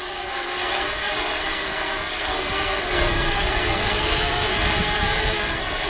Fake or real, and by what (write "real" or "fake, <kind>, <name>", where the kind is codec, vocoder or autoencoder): fake, codec, SNAC